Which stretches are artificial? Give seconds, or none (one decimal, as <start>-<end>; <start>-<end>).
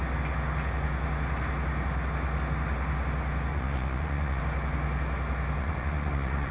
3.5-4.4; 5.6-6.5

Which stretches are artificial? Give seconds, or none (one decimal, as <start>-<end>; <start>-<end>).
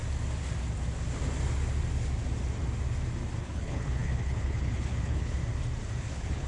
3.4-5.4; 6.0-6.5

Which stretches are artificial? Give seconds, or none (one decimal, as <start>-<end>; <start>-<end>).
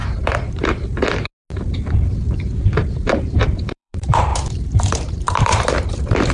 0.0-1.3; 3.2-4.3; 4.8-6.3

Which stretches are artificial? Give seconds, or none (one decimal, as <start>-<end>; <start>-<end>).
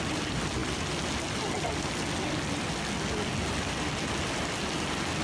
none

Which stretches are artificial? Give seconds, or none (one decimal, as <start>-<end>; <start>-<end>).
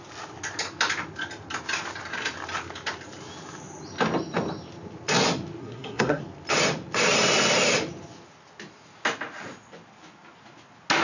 5.6-6.2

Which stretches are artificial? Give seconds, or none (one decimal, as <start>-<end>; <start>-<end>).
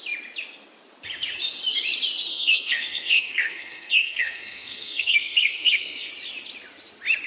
2.3-6.1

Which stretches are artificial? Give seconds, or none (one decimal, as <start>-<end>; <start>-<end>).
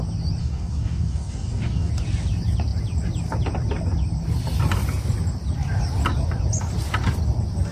0.4-1.9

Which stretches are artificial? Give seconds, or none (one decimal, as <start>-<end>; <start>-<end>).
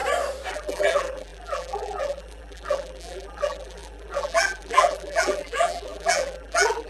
0.5-6.9